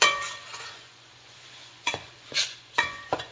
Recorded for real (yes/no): no